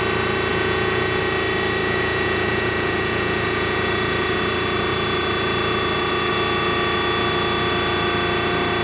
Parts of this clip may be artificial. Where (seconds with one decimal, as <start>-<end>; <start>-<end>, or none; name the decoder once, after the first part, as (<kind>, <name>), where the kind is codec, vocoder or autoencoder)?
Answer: 0.5-1.2 (vocoder, Vocos); 1.8-4.4